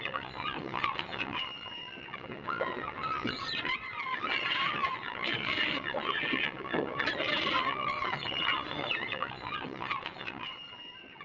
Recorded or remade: remade